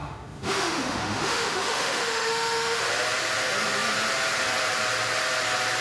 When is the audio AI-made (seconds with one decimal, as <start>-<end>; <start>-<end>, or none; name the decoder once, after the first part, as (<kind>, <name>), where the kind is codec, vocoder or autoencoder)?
0.0-2.8 (autoencoder, DAC-VAE)